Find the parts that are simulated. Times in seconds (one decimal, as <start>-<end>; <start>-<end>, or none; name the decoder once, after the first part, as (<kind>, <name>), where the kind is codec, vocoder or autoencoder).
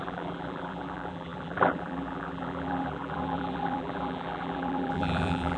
0.0-5.6 (vocoder, BigVGAN v2)